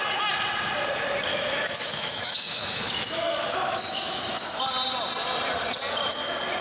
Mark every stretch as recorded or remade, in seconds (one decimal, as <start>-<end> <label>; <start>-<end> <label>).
0.0-1.3 recorded; 1.3-4.6 remade; 4.6-6.6 recorded